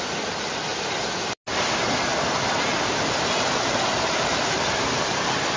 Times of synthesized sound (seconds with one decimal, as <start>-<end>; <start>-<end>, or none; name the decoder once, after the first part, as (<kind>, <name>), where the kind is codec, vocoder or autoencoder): none